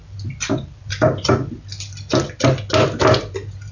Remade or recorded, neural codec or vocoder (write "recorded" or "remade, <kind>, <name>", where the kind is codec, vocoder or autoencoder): recorded